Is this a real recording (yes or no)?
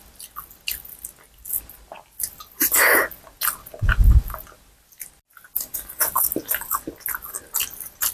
yes